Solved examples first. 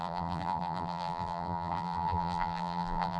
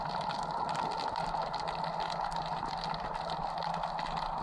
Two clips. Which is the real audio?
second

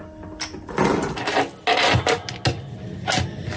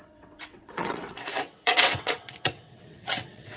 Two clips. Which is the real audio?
first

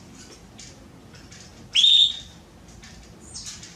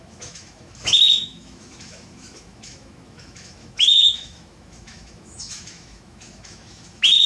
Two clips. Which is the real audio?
first